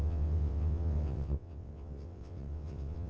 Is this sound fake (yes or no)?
yes